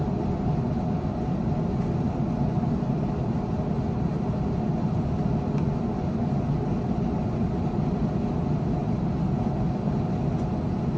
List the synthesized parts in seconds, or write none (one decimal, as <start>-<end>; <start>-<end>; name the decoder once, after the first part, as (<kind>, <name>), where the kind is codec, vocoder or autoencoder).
none